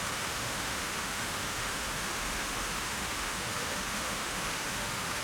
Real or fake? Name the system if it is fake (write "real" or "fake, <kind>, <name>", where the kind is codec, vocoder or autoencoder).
fake, autoencoder, DAC-VAE